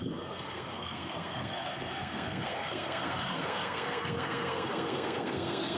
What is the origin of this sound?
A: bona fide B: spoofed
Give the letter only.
B